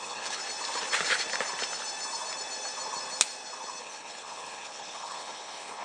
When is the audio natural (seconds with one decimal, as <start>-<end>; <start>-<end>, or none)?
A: 0.4-3.8